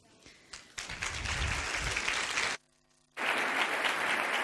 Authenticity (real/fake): real